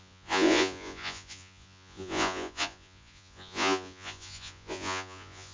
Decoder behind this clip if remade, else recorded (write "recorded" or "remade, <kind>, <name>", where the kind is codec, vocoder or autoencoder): remade, vocoder, Vocos